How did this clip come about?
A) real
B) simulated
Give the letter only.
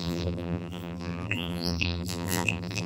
B